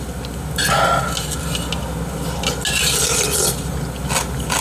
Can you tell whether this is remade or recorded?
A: recorded